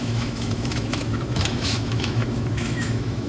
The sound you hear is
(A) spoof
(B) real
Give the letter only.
A